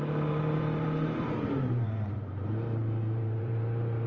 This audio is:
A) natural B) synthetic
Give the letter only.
B